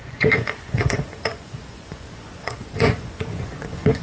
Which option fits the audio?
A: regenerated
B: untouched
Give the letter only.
A